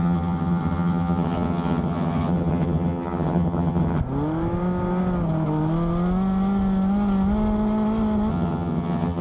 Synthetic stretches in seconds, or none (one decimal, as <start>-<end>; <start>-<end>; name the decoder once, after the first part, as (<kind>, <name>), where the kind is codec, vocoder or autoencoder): 0.0-4.0 (vocoder, HiFi-GAN); 8.3-9.2